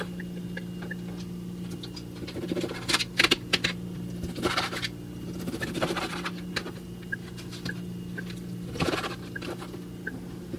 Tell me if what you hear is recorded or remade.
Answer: remade